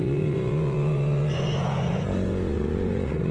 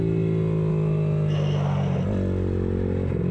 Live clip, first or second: second